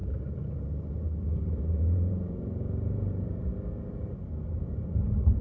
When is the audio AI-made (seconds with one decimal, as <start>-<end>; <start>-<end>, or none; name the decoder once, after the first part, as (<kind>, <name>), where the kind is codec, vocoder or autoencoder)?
0.0-3.5 (vocoder, BigVGAN v2); 4.5-5.4